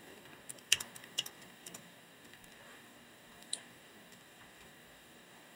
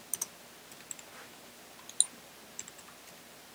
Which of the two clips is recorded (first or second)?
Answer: second